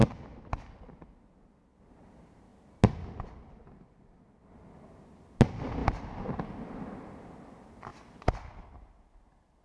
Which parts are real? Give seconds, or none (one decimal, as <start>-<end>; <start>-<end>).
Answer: 0.0-9.6